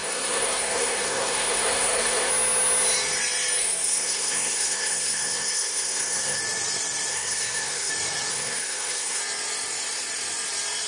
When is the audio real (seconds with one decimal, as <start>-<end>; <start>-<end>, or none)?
2.3-3.6; 6.4-7.1; 7.9-8.3; 9.2-10.9